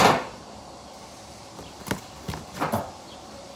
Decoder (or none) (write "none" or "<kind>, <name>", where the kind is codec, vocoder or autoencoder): none